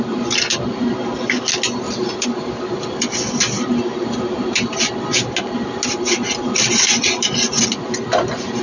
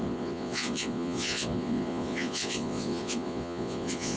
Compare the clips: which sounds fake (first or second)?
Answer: second